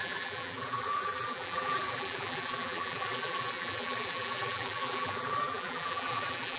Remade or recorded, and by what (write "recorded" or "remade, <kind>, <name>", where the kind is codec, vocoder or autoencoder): remade, vocoder, BigVGAN v2